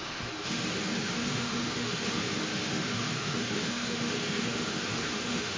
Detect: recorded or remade remade